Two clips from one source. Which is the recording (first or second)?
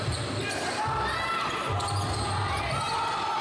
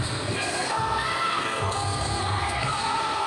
first